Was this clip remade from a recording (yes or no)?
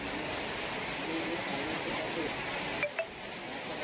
no